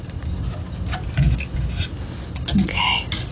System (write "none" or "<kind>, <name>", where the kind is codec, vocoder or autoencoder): none